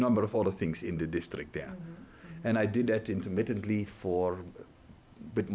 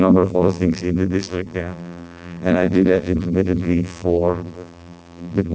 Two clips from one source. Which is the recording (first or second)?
first